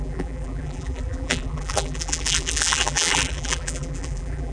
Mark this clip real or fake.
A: fake